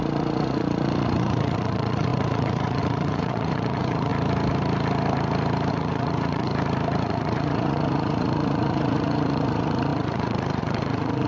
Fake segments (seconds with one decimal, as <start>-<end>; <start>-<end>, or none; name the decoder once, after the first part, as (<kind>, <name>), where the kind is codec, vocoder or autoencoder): 0.0-4.1 (vocoder, Vocos); 5.7-6.5; 7.0-11.3